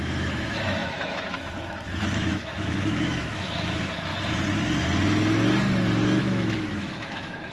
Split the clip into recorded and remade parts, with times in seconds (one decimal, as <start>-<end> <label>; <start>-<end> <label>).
0.0-4.1 remade; 4.1-6.2 recorded; 6.2-7.5 remade